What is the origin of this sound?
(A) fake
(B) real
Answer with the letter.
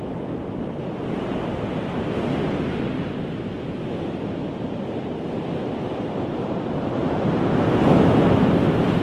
B